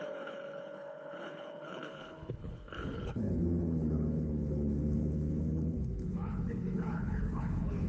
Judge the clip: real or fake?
fake